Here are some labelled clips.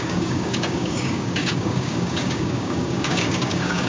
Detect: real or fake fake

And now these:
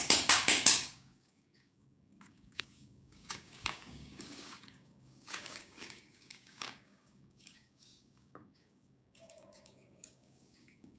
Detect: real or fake fake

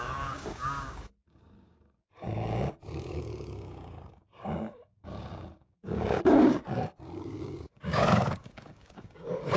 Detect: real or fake fake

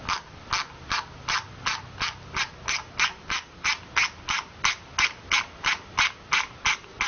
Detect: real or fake real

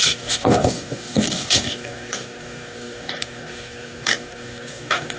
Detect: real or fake fake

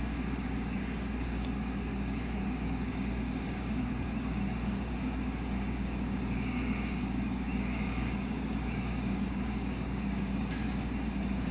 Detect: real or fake fake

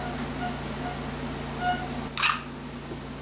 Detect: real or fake real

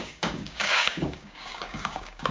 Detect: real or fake fake